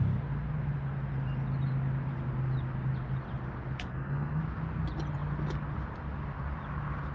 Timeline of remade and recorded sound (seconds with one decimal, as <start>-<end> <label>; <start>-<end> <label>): 0.0-3.9 recorded; 3.9-4.4 remade; 4.4-7.1 recorded